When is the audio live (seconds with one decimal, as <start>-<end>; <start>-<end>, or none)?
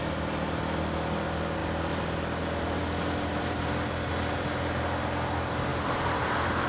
0.0-5.7